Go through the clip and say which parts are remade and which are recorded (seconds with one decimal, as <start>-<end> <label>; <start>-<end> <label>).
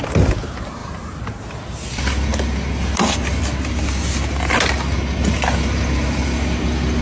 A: 0.0-7.0 recorded